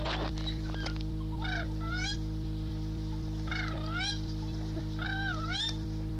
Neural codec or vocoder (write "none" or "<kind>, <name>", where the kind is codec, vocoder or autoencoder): none